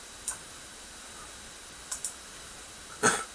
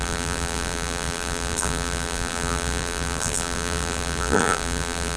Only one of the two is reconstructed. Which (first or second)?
second